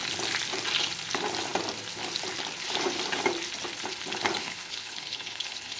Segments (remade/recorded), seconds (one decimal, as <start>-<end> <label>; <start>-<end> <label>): 0.0-4.4 recorded; 4.4-5.8 remade